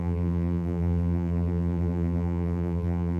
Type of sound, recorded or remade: remade